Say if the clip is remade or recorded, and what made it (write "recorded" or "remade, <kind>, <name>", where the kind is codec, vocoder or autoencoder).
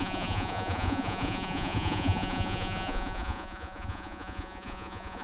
remade, vocoder, Vocos